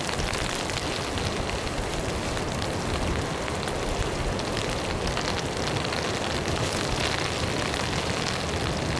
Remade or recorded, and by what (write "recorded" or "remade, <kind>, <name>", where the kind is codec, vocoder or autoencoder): recorded